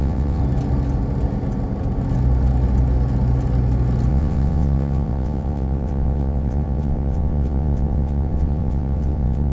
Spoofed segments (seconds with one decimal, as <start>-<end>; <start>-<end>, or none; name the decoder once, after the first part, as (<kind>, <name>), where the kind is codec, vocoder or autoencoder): 0.0-0.4 (vocoder, WaveNeXt); 4.1-9.5